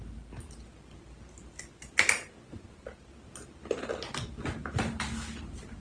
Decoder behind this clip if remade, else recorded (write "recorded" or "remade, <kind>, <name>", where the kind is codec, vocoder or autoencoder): recorded